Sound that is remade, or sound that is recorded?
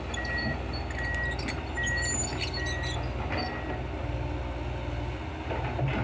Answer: recorded